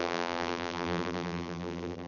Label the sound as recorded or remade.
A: remade